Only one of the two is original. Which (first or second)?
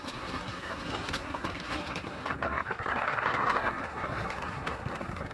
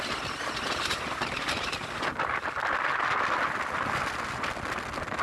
second